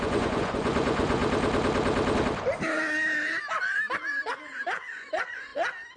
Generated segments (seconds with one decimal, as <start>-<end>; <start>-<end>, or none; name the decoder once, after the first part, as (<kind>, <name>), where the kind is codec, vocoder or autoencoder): 0.0-1.2 (vocoder, Vocos); 4.8-5.5